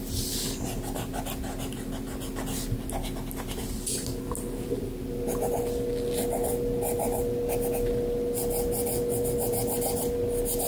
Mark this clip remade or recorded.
recorded